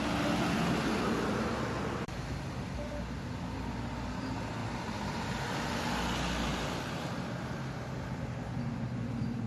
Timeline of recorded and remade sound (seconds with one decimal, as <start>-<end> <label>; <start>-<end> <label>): 0.0-9.5 recorded